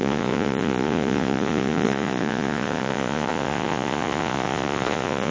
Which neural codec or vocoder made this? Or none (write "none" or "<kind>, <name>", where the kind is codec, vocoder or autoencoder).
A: vocoder, Vocos